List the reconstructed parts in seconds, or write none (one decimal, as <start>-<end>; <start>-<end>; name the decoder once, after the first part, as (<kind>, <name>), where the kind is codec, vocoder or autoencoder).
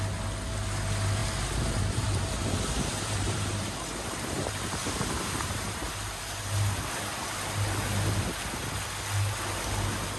1.2-6.4 (vocoder, BigVGAN v2)